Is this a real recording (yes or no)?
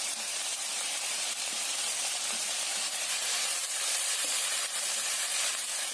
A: no